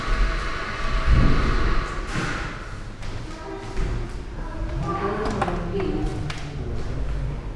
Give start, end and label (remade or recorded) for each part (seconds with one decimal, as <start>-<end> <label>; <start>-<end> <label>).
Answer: 0.0-7.6 recorded